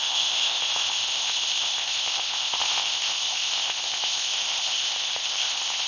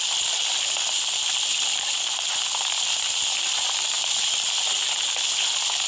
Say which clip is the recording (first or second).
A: second